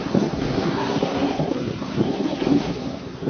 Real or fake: fake